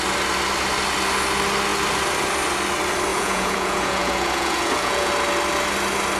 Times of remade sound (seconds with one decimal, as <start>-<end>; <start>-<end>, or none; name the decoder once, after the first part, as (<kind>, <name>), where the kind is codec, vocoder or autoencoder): 3.1-5.1 (vocoder, Vocos)